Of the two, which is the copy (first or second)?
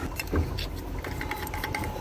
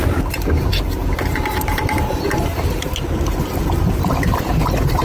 second